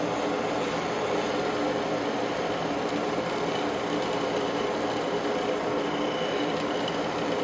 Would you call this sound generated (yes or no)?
no